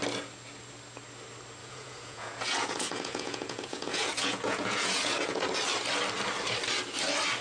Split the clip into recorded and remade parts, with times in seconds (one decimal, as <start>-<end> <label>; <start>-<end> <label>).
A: 0.0-1.6 recorded; 1.6-5.4 remade; 5.4-7.4 recorded